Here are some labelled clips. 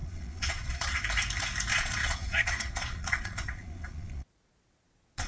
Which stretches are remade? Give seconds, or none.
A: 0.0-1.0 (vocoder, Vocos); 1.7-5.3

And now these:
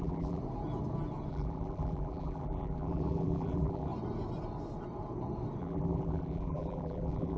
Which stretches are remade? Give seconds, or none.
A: 0.0-0.4 (vocoder, BigVGAN v2); 1.3-3.9; 5.6-7.4

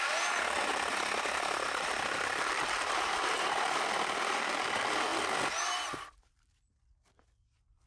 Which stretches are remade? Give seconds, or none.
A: 0.7-4.6 (vocoder, BigVGAN v2)

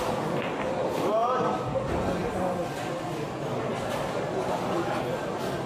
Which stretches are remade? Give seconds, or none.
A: none

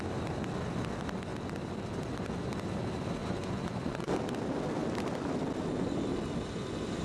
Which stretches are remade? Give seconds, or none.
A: 3.2-4.1 (vocoder, Vocos)

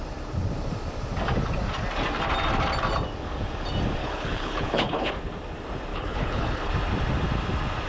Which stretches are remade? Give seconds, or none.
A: 4.0-5.1 (codec, HILCodec); 5.9-6.7